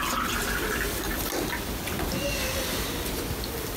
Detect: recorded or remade recorded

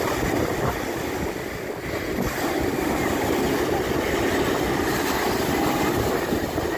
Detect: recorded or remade recorded